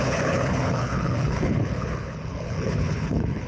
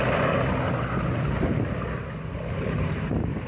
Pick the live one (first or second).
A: second